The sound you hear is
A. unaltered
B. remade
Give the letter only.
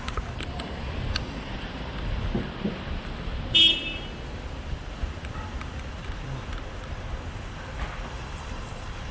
B